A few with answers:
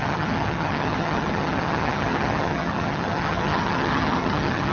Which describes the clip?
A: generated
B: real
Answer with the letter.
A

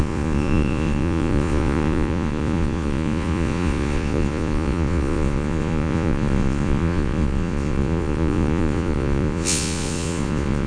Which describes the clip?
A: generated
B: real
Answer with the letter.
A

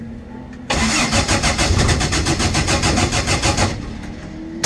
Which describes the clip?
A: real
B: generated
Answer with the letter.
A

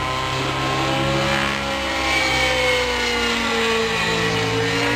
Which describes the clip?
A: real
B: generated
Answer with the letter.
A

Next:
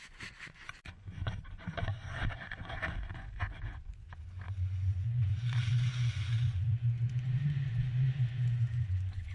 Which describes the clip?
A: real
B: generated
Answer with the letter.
B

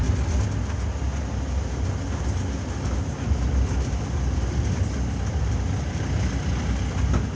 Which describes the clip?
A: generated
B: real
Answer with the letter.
B